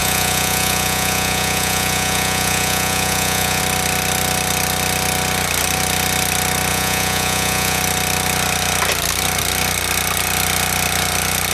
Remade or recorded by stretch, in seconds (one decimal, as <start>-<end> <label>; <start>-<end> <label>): 0.0-3.6 remade; 3.6-6.7 recorded; 6.7-7.8 remade; 7.8-11.5 recorded